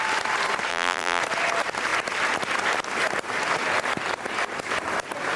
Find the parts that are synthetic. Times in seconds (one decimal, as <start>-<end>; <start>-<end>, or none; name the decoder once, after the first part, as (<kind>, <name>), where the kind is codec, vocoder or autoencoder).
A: 0.7-1.2 (vocoder, BigVGAN v2)